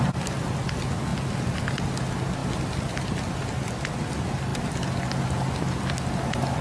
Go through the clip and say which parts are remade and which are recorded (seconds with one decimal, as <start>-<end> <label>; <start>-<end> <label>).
0.0-6.6 recorded